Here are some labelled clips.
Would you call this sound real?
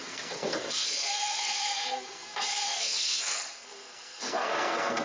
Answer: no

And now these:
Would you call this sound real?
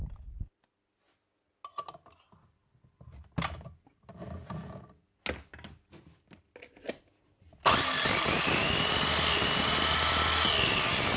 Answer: yes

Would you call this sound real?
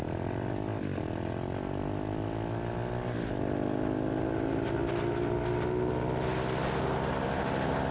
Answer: yes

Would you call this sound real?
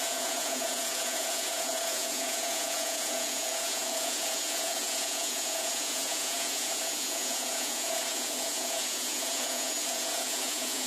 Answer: no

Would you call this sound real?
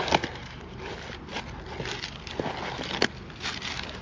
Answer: yes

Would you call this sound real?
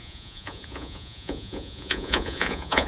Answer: no